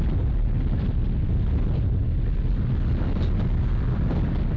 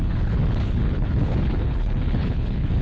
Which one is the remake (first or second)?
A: second